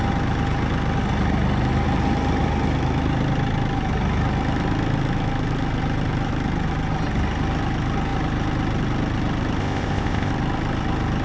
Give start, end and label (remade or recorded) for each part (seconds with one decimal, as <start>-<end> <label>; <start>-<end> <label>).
0.0-9.6 recorded; 9.6-10.3 remade; 10.3-11.2 recorded